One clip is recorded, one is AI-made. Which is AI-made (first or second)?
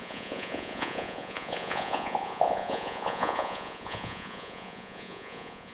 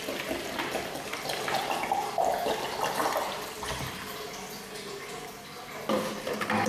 first